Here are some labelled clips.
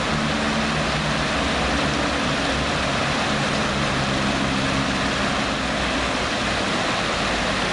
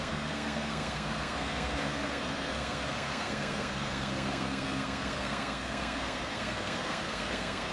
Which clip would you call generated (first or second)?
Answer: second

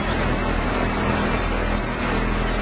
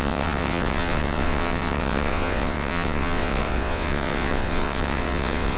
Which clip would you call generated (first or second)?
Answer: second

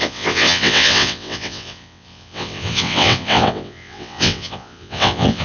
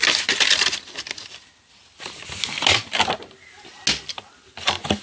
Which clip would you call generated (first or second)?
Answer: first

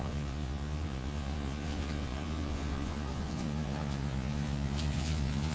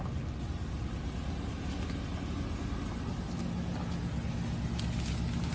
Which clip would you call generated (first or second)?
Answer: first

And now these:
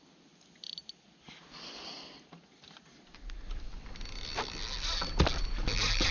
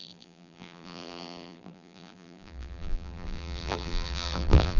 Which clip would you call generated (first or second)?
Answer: second